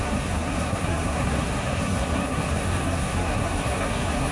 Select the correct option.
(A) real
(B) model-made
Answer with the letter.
B